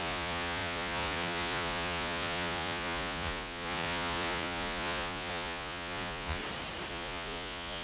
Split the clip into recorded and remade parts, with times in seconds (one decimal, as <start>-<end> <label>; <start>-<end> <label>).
0.0-6.4 remade; 6.4-6.9 recorded; 6.9-7.8 remade